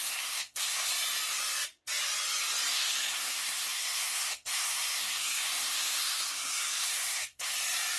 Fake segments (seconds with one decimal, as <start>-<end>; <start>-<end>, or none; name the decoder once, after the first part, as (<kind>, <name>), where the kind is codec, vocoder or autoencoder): 0.0-0.9 (codec, SNAC); 2.7-7.5